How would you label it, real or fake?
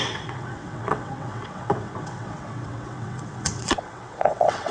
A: fake